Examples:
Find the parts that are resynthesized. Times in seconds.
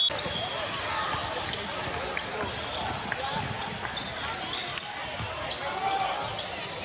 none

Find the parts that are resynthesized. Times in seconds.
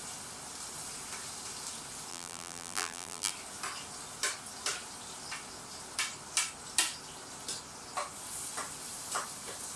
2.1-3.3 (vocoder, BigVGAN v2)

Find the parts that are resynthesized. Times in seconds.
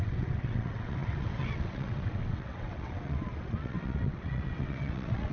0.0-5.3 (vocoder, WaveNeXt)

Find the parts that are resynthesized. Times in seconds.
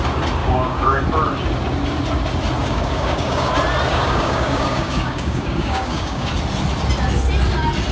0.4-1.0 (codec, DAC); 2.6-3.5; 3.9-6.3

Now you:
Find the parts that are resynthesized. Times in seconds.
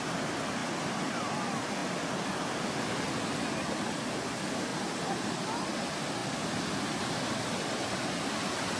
none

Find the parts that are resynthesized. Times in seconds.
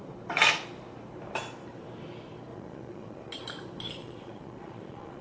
2.5-3.3 (vocoder, Vocos); 4.0-5.2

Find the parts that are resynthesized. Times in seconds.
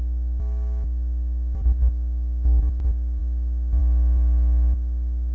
none